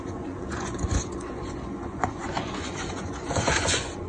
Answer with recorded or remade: remade